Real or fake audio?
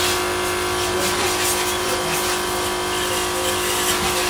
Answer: real